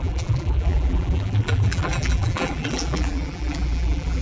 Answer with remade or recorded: remade